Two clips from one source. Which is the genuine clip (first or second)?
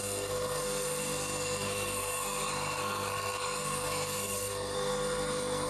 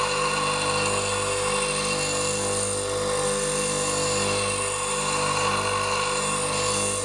second